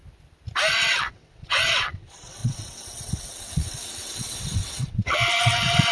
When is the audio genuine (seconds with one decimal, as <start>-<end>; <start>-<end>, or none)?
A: 0.0-0.7